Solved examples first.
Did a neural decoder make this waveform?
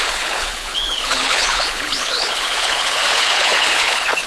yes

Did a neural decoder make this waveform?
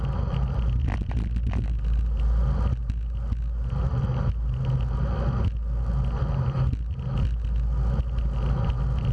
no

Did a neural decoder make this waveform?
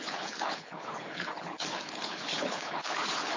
yes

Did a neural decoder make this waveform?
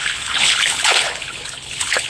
yes